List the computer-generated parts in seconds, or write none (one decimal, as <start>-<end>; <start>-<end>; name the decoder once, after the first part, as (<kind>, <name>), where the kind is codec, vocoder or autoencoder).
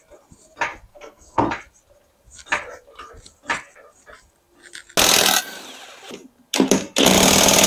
0.9-1.4 (codec, SNAC)